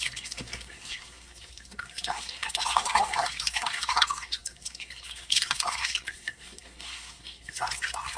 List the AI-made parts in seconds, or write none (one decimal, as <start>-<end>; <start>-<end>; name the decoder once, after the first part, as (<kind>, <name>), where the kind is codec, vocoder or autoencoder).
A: 0.0-8.2 (codec, SNAC)